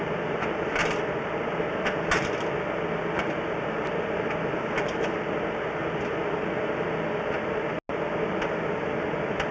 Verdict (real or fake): real